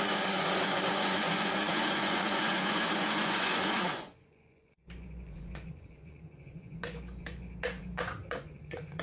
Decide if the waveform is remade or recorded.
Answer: remade